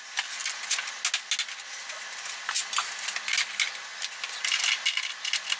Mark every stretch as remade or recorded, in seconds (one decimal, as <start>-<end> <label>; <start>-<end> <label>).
0.0-5.6 recorded

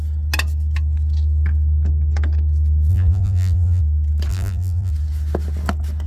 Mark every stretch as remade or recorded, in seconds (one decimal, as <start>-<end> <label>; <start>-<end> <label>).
0.0-2.9 recorded; 2.9-3.8 remade; 3.8-4.3 recorded; 4.3-4.9 remade; 4.9-6.1 recorded

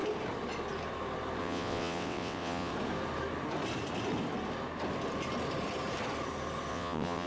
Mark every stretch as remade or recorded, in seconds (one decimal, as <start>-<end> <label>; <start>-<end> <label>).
0.0-1.4 recorded; 1.4-2.7 remade; 2.7-6.7 recorded; 6.7-7.3 remade

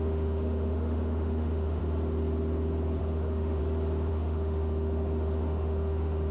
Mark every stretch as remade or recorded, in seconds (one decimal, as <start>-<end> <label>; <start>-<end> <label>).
0.0-1.8 remade; 1.8-3.0 recorded; 3.0-3.6 remade; 3.6-4.1 recorded; 4.1-6.3 remade

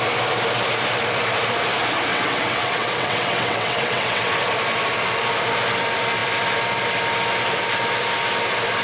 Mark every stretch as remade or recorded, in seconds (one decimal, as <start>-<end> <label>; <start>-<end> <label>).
0.0-2.1 recorded; 2.1-4.3 remade; 4.3-8.8 recorded